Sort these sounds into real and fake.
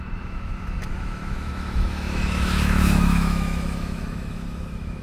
fake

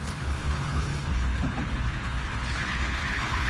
fake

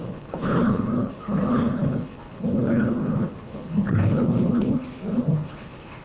fake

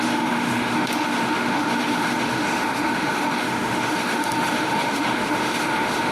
fake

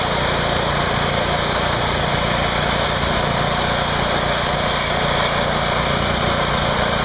real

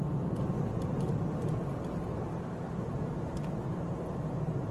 real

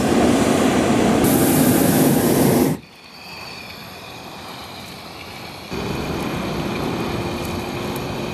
real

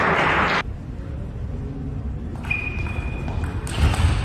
real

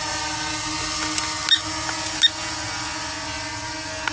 real